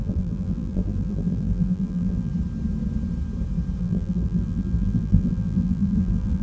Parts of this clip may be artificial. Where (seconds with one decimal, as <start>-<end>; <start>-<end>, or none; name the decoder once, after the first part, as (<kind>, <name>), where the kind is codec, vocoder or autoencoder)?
0.0-2.3 (vocoder, BigVGAN v2); 3.8-6.4